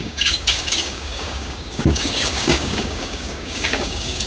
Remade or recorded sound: remade